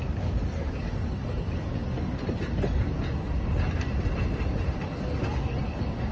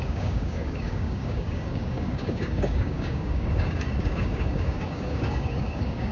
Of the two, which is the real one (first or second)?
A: first